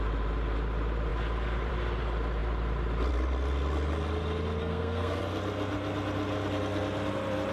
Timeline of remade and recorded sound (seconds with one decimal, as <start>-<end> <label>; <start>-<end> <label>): 0.0-4.6 recorded; 4.6-5.2 remade; 5.2-7.5 recorded